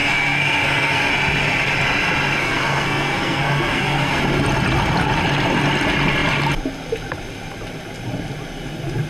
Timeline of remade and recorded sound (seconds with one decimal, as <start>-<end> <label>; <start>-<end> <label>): 0.0-1.1 remade; 1.1-2.4 recorded; 2.4-4.2 remade; 4.2-9.1 recorded